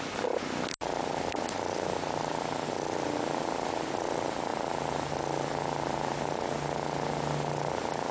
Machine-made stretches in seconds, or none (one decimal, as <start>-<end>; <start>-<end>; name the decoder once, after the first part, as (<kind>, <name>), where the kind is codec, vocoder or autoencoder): none